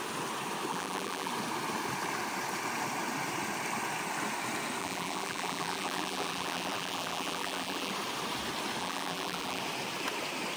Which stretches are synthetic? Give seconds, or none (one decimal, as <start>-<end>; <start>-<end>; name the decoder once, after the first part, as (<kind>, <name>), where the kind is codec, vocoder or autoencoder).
0.7-1.3 (vocoder, BigVGAN v2); 4.8-7.9; 8.8-9.6

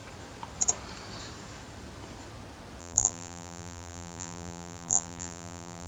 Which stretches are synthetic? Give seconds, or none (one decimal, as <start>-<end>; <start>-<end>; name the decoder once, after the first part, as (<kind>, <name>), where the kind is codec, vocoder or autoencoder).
2.8-5.9 (vocoder, BigVGAN v2)

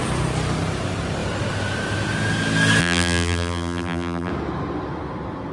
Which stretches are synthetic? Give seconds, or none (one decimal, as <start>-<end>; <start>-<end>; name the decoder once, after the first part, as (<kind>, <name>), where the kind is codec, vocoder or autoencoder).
2.8-4.3 (vocoder, BigVGAN v2)

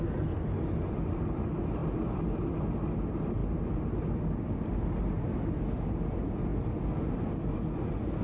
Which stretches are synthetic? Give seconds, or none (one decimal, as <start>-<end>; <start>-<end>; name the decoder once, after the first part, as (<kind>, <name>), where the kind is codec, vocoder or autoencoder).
1.8-2.5 (vocoder, BigVGAN v2); 3.4-5.9; 6.5-7.3

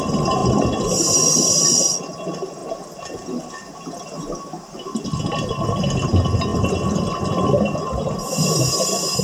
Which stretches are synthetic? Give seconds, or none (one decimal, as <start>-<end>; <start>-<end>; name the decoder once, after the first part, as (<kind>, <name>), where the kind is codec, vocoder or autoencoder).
0.4-1.7 (vocoder, BigVGAN v2); 2.6-5.2; 6.5-9.2

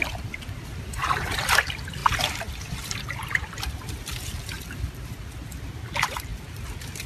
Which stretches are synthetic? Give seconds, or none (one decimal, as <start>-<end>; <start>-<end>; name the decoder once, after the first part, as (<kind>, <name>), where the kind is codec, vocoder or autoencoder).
0.0-2.0 (vocoder, BigVGAN v2); 2.5-6.3